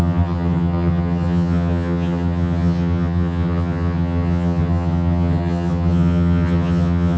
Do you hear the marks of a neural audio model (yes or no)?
yes